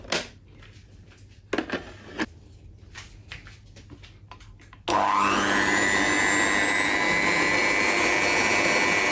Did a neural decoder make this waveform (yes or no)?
no